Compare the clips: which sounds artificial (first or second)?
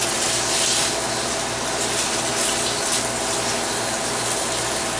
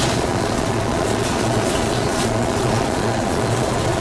second